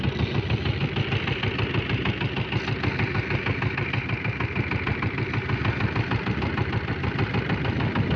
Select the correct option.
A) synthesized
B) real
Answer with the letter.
B